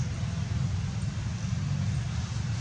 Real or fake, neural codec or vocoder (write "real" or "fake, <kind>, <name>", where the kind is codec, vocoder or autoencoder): real